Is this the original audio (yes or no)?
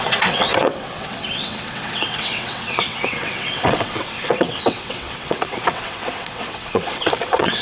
no